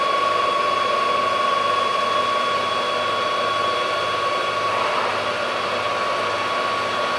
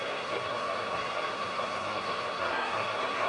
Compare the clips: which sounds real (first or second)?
first